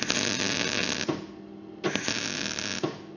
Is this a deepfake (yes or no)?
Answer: no